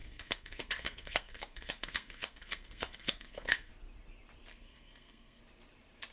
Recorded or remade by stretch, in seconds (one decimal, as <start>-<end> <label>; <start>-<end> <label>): 0.0-3.7 remade; 3.7-4.5 recorded; 4.5-5.4 remade; 5.4-6.1 recorded